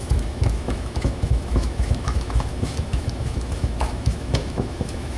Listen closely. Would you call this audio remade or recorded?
remade